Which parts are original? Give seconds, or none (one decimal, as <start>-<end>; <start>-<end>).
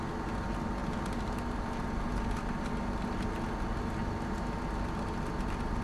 0.0-5.8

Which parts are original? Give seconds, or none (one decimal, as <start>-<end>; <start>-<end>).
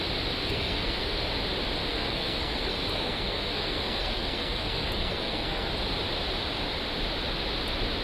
0.0-0.4; 1.2-1.9; 5.7-8.0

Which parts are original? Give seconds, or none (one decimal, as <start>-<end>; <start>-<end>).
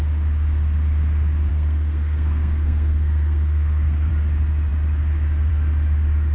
0.0-1.5; 4.1-6.3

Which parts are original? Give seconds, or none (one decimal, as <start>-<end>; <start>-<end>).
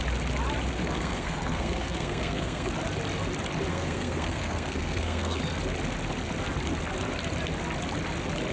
0.0-0.8; 2.7-3.7; 5.4-8.5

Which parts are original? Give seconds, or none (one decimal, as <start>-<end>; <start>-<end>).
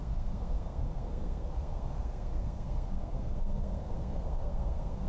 none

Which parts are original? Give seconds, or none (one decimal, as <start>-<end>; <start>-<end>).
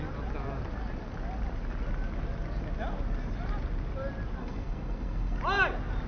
0.0-4.4; 5.4-6.1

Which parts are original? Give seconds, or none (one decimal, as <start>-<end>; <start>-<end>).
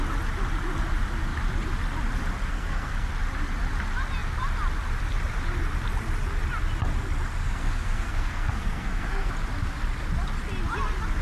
0.0-2.5; 3.1-7.4; 9.3-11.2